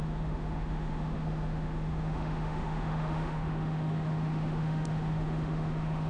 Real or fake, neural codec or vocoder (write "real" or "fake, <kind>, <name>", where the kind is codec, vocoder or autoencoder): fake, autoencoder, DAC-VAE